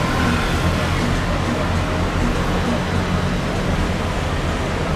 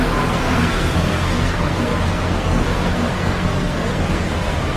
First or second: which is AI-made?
second